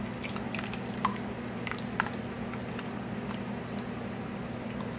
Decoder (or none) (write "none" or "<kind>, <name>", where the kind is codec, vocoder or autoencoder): none